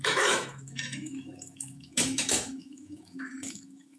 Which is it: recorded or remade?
remade